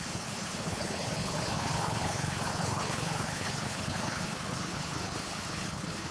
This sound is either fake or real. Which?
fake